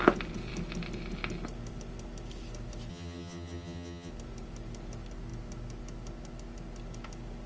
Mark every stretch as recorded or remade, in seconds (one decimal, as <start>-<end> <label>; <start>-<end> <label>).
0.0-2.9 recorded; 2.9-4.1 remade; 4.1-7.5 recorded